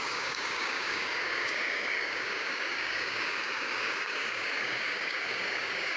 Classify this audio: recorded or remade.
remade